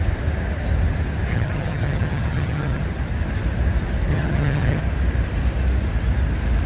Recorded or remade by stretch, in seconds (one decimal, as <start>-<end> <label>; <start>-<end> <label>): 0.0-1.3 recorded; 1.3-2.8 remade; 2.8-4.1 recorded; 4.1-4.8 remade; 4.8-6.7 recorded

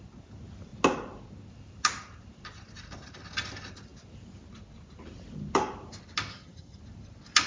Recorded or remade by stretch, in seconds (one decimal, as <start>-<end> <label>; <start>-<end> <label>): 0.0-6.3 recorded; 6.3-6.8 remade; 6.8-7.5 recorded

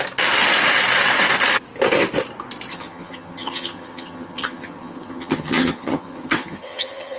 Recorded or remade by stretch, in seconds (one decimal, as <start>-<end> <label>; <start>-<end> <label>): 0.0-2.7 recorded; 2.7-7.2 remade